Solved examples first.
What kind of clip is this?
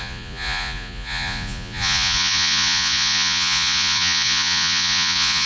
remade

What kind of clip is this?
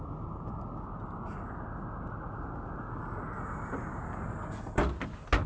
recorded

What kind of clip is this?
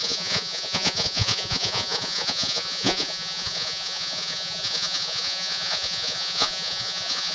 remade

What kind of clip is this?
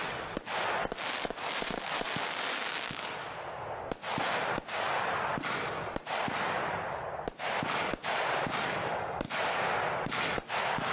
recorded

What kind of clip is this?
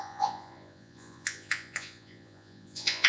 remade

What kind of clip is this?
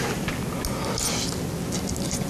recorded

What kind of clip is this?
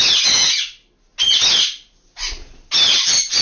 recorded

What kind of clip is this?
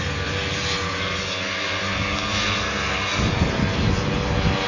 recorded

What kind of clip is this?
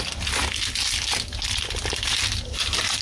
recorded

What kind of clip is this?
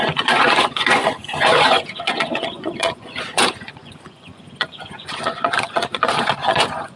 remade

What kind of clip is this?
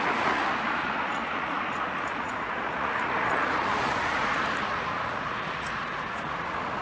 remade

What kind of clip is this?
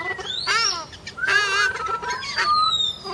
recorded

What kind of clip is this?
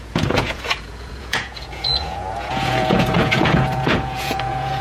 remade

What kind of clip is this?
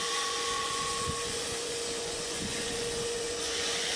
remade